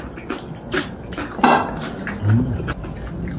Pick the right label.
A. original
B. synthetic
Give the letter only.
A